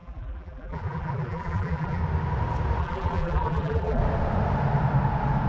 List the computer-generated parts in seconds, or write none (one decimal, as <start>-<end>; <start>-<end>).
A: 0.0-2.0; 2.8-4.0